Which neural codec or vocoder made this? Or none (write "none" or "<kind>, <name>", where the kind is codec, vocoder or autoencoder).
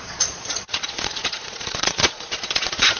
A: vocoder, Vocos